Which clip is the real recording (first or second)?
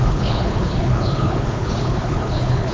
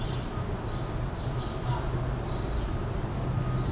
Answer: second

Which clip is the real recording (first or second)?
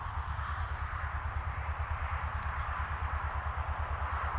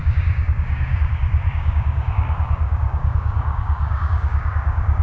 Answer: first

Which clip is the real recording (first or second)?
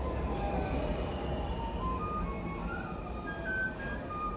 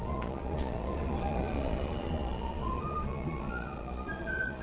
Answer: first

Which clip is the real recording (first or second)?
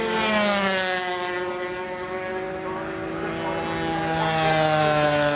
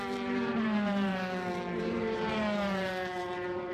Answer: first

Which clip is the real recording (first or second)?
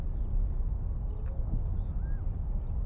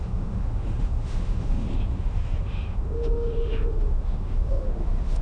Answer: first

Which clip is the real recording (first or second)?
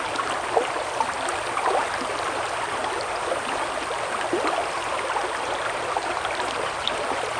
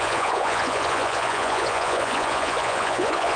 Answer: first